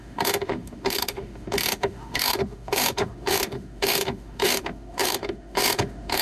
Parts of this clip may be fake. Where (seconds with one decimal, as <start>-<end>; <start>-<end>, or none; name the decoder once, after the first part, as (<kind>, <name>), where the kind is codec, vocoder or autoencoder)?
0.0-6.2 (autoencoder, DAC-VAE)